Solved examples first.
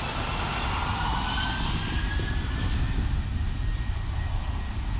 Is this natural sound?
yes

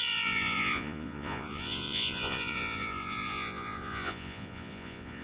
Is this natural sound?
no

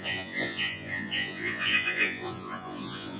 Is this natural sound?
no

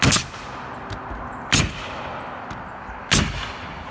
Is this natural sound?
yes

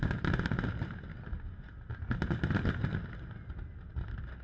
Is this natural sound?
yes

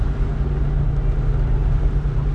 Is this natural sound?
yes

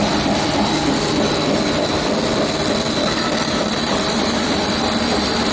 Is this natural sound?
no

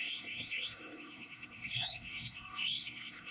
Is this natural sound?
no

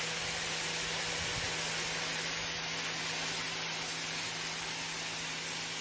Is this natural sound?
yes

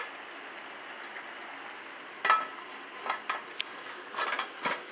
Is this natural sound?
yes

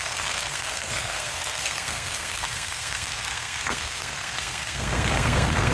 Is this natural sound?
no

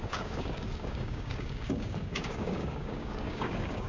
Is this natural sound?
no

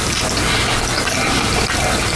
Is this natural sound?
yes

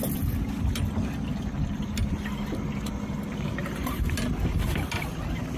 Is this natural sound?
yes